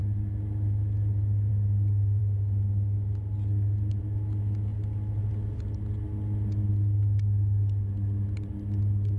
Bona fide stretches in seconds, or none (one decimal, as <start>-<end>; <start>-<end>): 0.0-9.2